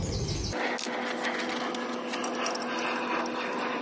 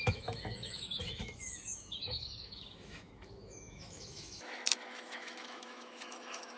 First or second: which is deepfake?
second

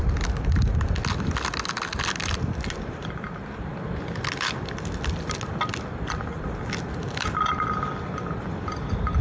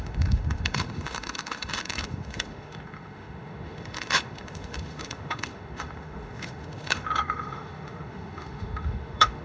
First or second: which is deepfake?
second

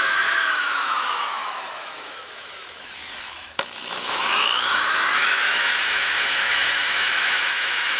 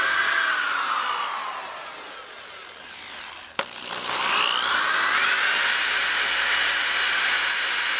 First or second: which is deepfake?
first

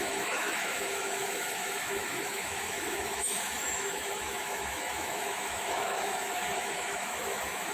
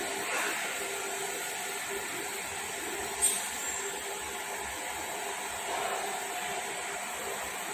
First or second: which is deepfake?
first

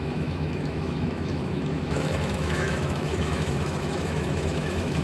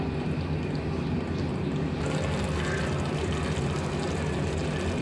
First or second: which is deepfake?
first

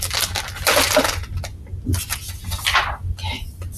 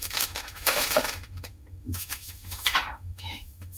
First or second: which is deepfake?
second